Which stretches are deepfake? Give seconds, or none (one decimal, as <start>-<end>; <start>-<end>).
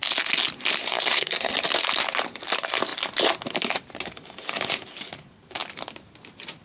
0.8-1.5